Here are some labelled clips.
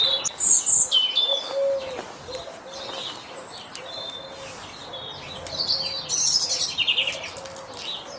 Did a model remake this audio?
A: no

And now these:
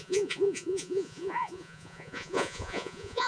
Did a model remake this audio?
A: yes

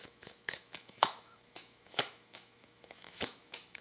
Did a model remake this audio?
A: yes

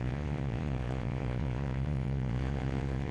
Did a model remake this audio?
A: yes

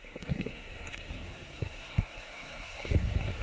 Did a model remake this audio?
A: yes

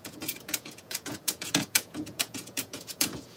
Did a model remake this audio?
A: yes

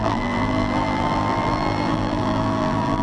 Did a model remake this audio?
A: yes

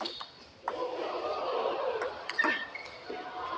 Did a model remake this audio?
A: no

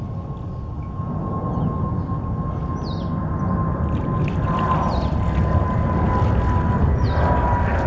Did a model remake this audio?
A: no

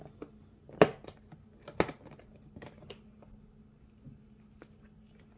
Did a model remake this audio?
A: no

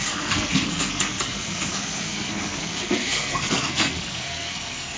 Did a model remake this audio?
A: yes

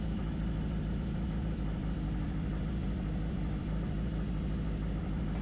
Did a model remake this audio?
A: yes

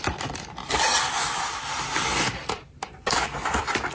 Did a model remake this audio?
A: no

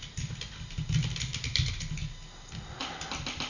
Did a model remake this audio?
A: no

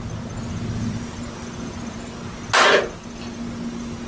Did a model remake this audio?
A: no